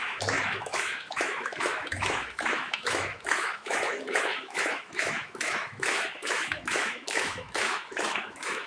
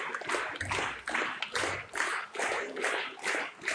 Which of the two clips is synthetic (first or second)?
first